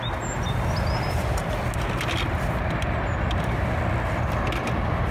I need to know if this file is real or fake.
real